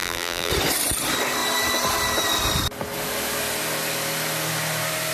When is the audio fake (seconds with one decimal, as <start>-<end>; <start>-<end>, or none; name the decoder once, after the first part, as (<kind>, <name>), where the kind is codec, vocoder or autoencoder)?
0.0-0.5 (vocoder, BigVGAN v2)